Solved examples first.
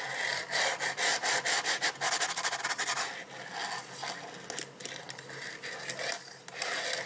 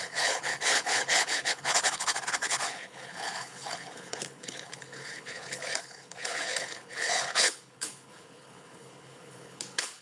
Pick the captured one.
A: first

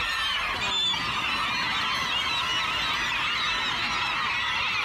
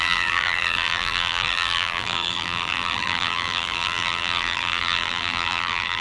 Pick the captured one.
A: first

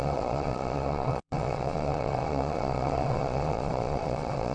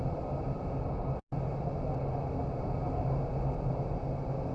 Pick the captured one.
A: second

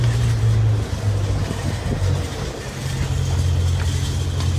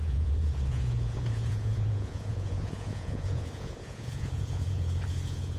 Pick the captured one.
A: first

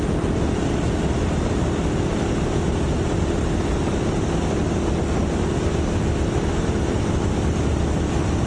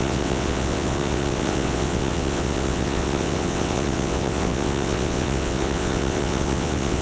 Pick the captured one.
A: first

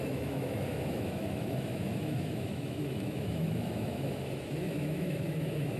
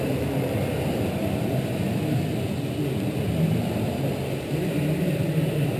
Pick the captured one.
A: second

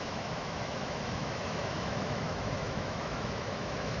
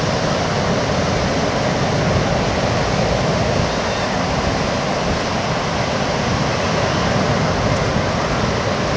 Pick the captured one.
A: second